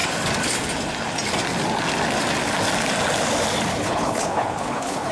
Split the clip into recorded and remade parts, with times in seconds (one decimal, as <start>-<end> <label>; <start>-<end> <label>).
0.0-3.7 recorded; 3.7-5.1 remade